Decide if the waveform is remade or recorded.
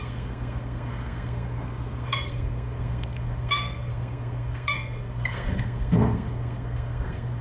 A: remade